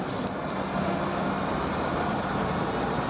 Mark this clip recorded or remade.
recorded